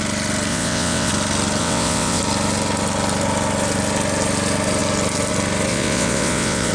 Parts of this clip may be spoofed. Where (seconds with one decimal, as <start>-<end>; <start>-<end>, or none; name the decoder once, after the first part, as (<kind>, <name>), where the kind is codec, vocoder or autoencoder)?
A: 0.5-1.1 (vocoder, WaveNeXt); 1.6-2.2; 5.7-6.7

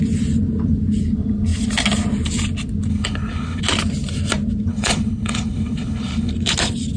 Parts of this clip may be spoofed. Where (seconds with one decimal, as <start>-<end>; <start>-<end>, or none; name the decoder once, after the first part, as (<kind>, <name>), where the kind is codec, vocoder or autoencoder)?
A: 2.9-3.6 (codec, HILCodec); 4.7-6.3

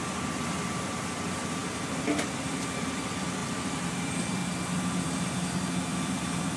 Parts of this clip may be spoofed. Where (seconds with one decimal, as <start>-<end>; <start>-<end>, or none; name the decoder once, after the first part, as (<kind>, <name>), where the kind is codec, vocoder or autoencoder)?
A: 0.0-4.4 (vocoder, BigVGAN v2); 5.8-6.6

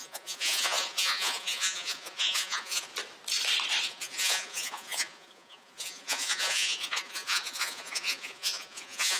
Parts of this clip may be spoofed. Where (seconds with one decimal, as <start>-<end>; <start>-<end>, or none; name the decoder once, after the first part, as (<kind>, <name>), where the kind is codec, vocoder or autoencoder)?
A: 0.0-2.9 (vocoder, Vocos); 3.8-9.2

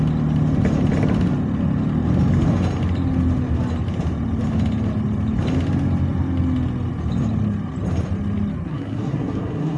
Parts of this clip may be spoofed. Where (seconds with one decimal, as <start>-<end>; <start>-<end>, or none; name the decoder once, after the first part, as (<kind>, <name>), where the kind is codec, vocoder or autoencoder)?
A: 8.7-9.8 (codec, SNAC)